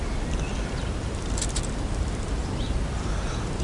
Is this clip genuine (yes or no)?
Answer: yes